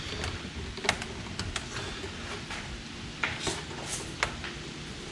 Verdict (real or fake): real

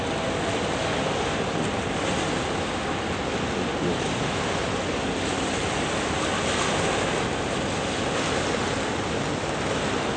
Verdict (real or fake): real